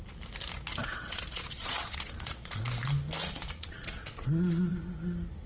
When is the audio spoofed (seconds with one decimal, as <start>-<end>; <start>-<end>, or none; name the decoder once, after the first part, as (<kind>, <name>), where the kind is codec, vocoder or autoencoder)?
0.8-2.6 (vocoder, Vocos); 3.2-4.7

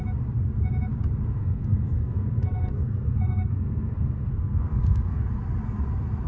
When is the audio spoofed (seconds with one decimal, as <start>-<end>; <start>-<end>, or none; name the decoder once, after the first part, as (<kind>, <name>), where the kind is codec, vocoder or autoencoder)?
1.4-5.2 (codec, SNAC)

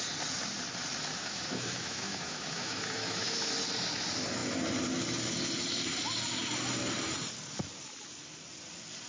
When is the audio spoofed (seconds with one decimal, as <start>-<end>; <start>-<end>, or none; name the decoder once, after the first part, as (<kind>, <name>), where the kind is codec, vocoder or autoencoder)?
1.2-3.5 (autoencoder, DAC-VAE)

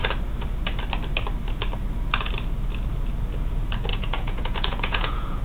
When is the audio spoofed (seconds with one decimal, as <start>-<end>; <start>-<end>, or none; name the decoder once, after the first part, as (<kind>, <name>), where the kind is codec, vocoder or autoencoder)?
3.9-5.4 (vocoder, Vocos)